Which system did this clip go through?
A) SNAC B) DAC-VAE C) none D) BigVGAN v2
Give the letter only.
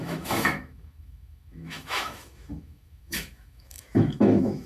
B